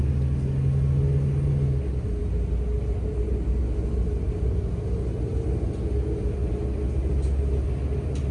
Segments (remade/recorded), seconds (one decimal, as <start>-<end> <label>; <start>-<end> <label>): 0.0-8.3 recorded